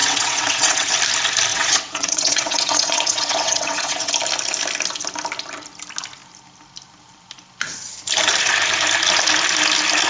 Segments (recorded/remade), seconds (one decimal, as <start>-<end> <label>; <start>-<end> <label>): 0.0-0.9 remade; 0.9-1.5 recorded; 1.5-4.1 remade; 4.1-10.1 recorded